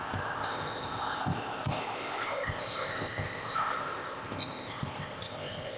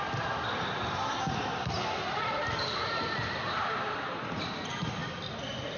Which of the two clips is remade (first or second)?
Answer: first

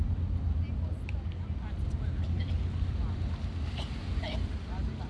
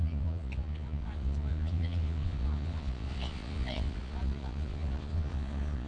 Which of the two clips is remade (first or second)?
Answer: second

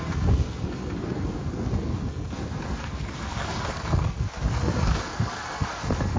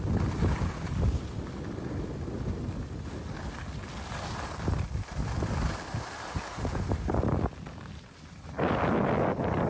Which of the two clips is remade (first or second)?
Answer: first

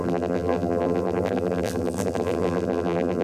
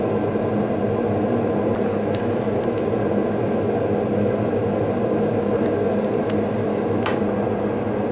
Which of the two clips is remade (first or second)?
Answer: first